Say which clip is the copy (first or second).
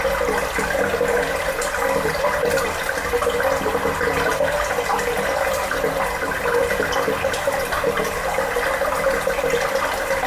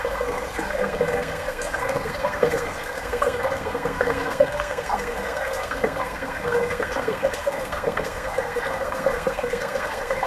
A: second